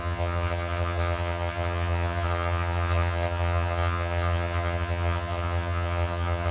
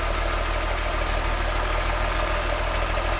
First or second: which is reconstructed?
first